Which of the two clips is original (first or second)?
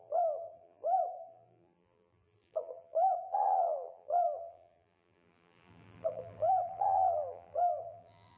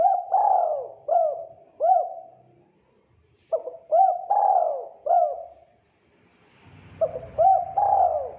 second